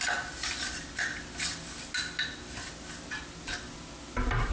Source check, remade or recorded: recorded